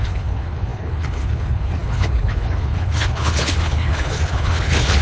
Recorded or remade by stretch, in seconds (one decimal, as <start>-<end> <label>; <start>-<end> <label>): 0.0-5.0 remade